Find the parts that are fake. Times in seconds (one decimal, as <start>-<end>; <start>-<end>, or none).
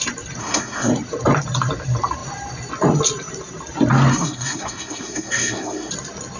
0.4-0.9; 4.1-5.9